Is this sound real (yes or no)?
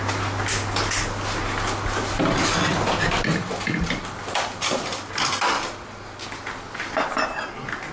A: yes